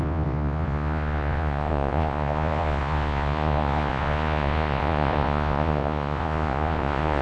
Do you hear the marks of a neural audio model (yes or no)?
yes